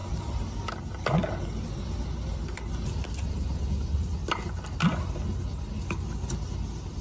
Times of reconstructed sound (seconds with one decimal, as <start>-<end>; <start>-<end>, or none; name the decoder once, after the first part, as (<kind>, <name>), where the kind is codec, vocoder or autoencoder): none